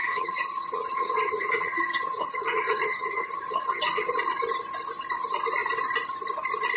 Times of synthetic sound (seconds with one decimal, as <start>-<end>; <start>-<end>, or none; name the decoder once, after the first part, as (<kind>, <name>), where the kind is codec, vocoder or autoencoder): 0.0-4.1 (vocoder, HiFi-GAN)

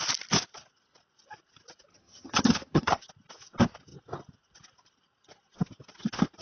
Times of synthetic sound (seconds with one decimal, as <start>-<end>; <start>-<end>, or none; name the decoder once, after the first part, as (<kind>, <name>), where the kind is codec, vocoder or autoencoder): 1.9-3.0 (vocoder, HiFi-GAN)